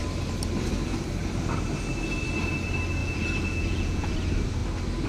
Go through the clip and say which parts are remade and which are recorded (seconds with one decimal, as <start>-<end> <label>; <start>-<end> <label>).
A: 0.0-3.0 recorded; 3.0-4.1 remade; 4.1-5.1 recorded